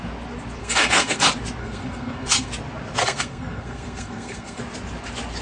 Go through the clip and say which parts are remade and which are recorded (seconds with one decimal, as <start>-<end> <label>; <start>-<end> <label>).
0.0-0.6 recorded; 0.6-1.2 remade; 1.2-1.6 recorded; 1.6-2.5 remade; 2.5-3.0 recorded; 3.0-4.6 remade; 4.6-5.4 recorded

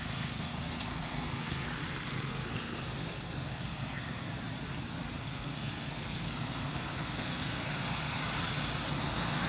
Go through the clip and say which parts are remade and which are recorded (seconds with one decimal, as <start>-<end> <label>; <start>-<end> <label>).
0.0-4.3 remade; 4.3-5.2 recorded; 5.2-8.2 remade; 8.2-9.0 recorded; 9.0-9.5 remade

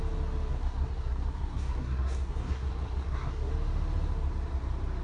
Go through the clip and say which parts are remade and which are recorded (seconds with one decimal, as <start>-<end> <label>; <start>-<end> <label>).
0.0-0.5 recorded; 0.5-3.5 remade; 3.5-5.0 recorded

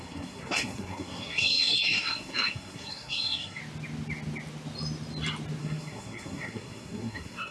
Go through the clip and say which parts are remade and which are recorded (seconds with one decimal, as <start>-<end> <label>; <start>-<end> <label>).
0.0-3.6 remade; 3.6-5.6 recorded; 5.6-7.5 remade

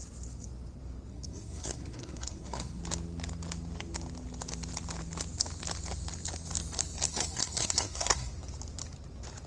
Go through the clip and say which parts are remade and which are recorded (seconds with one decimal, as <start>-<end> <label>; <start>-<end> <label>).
0.0-1.1 recorded; 1.1-2.8 remade; 2.8-7.1 recorded; 7.1-8.3 remade; 8.3-9.5 recorded

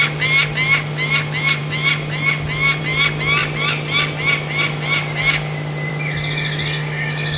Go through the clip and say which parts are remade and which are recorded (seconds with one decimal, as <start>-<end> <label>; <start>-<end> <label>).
0.0-7.4 recorded

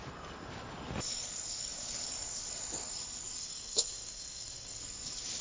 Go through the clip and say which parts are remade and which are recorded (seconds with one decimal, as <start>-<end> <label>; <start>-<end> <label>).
0.0-3.4 recorded; 3.4-4.8 remade; 4.8-5.4 recorded